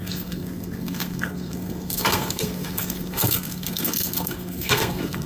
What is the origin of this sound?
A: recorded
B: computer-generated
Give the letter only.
B